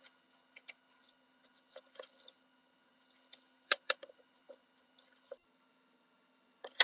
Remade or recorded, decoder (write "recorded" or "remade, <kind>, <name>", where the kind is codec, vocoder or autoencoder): remade, vocoder, HiFi-GAN